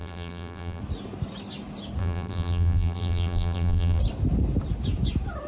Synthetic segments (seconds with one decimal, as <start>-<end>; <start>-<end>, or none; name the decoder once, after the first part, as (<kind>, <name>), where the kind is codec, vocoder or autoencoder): 0.0-0.8 (vocoder, BigVGAN v2); 2.0-4.0